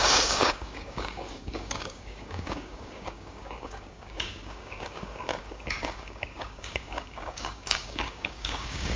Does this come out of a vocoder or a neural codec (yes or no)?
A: yes